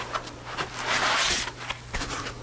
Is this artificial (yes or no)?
no